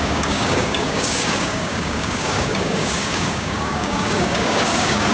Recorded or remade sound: remade